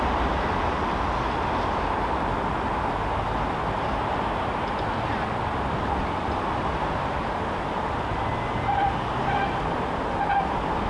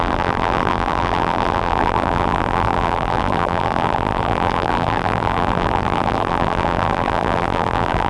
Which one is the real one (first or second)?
first